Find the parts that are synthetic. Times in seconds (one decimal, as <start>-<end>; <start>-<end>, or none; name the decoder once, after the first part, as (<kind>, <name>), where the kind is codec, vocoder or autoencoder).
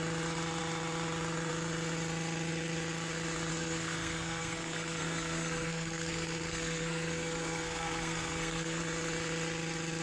3.5-8.8 (codec, SNAC)